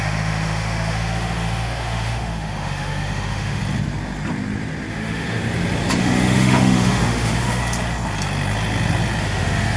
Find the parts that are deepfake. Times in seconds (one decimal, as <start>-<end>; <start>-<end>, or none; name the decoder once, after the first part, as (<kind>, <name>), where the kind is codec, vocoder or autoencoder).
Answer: 0.0-3.6 (autoencoder, DAC-VAE); 4.9-5.4; 6.0-7.6; 9.2-9.8